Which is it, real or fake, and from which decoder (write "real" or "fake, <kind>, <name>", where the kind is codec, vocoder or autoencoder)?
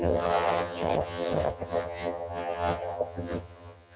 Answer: fake, vocoder, HiFi-GAN